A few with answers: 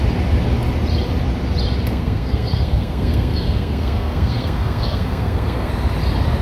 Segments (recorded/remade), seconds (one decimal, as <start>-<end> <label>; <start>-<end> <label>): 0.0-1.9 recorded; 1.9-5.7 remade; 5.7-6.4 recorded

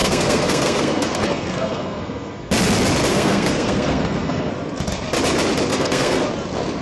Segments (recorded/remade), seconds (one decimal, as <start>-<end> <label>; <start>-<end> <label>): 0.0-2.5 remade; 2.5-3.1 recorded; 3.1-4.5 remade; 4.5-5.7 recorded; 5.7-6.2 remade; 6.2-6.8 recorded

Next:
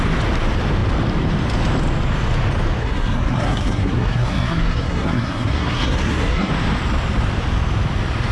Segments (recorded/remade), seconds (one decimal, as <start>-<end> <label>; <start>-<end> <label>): 0.0-2.8 recorded; 2.8-6.5 remade; 6.5-8.3 recorded

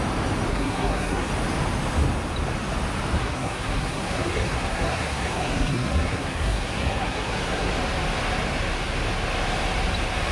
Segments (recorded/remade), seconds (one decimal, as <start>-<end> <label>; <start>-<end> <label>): 0.0-0.5 recorded; 0.5-1.3 remade; 1.3-3.2 recorded; 3.2-7.7 remade; 7.7-10.3 recorded

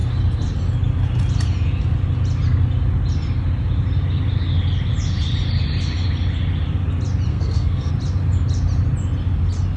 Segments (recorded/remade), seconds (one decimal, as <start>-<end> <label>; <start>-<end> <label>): 0.0-7.3 recorded; 7.3-7.9 remade; 7.9-9.8 recorded